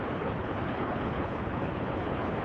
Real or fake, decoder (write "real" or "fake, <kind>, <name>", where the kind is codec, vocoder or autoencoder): fake, codec, HILCodec